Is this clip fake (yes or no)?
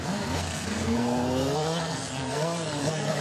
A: yes